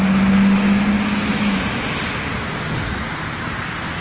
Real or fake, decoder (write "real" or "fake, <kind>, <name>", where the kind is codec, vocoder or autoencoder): real